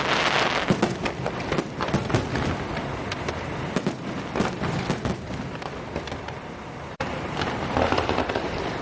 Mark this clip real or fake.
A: real